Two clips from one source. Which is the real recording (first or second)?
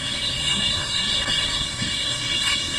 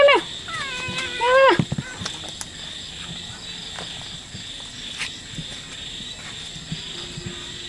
second